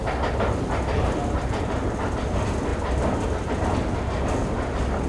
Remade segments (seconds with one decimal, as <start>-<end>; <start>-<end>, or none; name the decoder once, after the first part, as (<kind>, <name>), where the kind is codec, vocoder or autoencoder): none